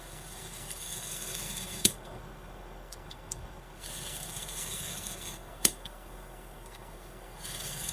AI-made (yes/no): yes